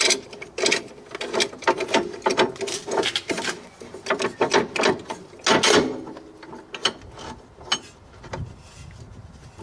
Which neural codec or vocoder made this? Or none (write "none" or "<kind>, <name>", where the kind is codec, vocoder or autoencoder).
none